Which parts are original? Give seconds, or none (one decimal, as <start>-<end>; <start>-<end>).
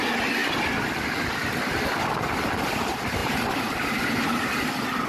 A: 0.0-3.2; 4.5-5.1